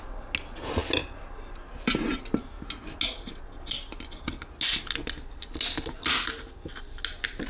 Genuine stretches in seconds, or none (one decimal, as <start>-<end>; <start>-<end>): 0.0-7.5